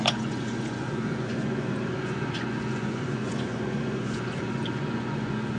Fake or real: fake